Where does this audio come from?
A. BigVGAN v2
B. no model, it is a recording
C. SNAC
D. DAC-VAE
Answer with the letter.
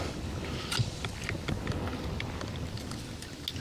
B